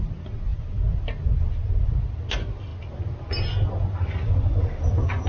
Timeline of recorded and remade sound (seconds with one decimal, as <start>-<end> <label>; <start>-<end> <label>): 0.0-5.3 recorded